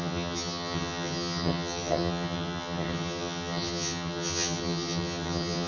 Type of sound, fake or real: fake